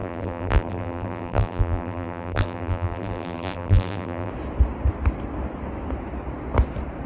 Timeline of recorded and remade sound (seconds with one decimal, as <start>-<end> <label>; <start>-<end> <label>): 0.0-4.3 remade; 4.3-7.1 recorded